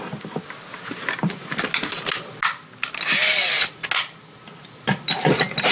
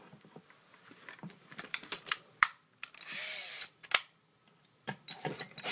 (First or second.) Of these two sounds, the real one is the first